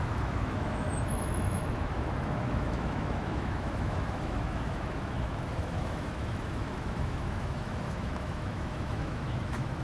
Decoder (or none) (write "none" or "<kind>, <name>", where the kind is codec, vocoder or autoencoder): autoencoder, DAC-VAE